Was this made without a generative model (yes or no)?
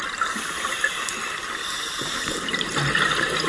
yes